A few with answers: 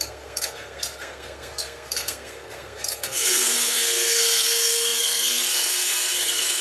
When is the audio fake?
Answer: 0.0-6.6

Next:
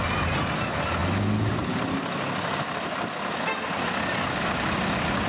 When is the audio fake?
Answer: none

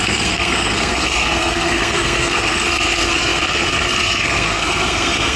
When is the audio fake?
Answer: 0.0-5.4

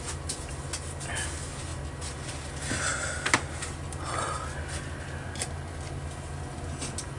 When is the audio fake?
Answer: none

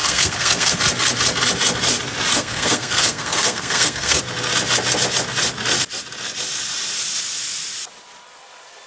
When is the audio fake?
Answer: 0.0-0.8; 2.3-4.2

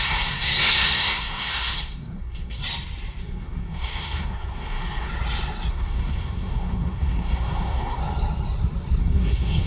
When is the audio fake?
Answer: 0.0-2.6; 3.2-5.1; 5.7-8.0; 9.0-9.7

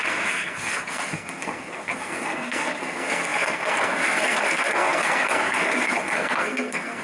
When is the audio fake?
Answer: 0.0-7.0

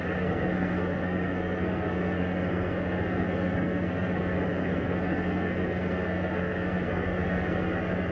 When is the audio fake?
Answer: 0.0-8.1